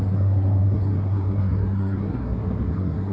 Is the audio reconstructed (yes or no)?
yes